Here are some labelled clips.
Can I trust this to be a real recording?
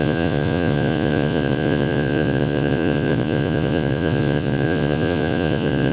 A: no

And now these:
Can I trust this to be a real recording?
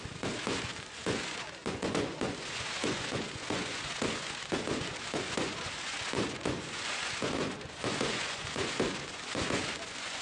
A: no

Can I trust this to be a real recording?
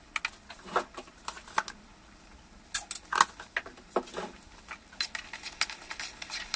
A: yes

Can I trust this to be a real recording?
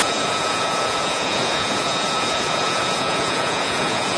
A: no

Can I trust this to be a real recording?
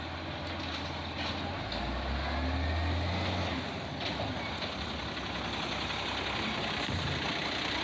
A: yes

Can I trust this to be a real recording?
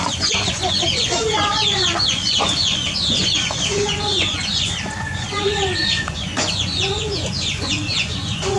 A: no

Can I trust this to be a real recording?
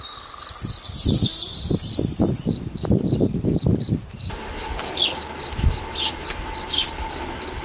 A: yes